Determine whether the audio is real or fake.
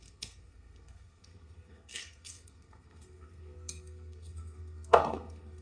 fake